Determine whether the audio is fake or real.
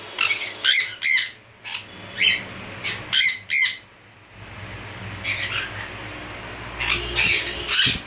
real